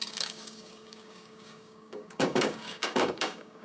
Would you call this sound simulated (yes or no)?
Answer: yes